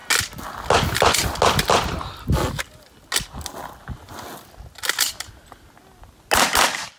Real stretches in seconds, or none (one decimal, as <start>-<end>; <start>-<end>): 0.0-7.0